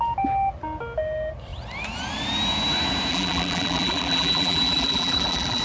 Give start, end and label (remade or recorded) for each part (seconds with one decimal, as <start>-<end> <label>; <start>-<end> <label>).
0.0-3.1 recorded; 3.1-5.6 remade